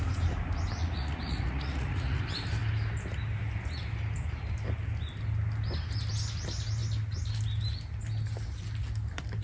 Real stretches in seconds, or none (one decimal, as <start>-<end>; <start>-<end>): 0.0-0.8; 2.2-9.4

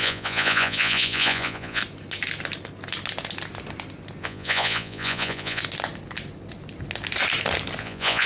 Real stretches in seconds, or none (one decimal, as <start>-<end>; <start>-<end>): 1.8-4.2; 5.6-7.8

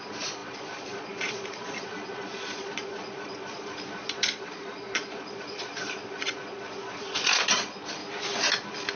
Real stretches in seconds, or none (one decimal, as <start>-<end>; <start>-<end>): 8.0-9.0

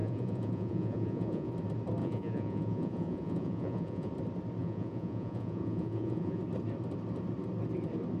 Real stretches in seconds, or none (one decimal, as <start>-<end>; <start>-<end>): 1.5-2.0; 4.1-4.6; 6.4-8.2